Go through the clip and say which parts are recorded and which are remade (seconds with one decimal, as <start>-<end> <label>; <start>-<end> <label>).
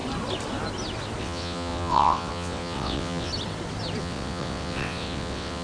0.0-1.2 recorded; 1.2-3.3 remade; 3.3-4.0 recorded; 4.0-5.6 remade